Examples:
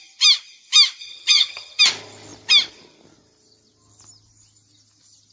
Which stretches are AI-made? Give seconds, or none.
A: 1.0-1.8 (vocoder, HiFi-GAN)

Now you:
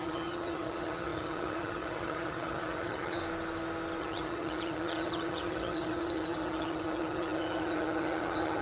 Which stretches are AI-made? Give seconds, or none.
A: 0.0-3.2 (vocoder, HiFi-GAN); 4.0-8.6

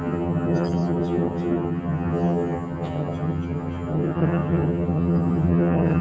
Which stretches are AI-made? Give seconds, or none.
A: 0.0-6.0 (vocoder, HiFi-GAN)

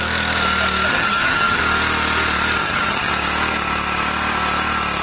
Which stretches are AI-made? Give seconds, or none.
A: 0.9-1.6 (vocoder, HiFi-GAN); 2.6-3.1

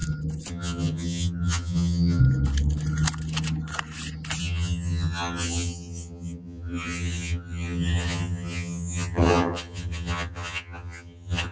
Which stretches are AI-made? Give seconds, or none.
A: 0.5-2.2 (vocoder, HiFi-GAN); 4.4-11.5

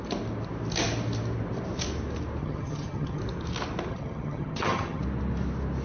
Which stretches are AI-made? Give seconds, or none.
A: 2.4-3.2 (vocoder, HiFi-GAN); 3.9-5.0